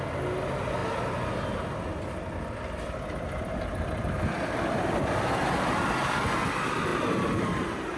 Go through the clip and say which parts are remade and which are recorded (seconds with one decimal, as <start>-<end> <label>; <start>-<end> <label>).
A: 0.0-8.0 recorded